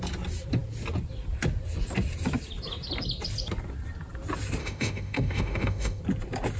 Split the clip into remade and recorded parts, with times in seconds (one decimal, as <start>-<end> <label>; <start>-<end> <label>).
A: 0.0-4.6 recorded; 4.6-6.0 remade; 6.0-6.6 recorded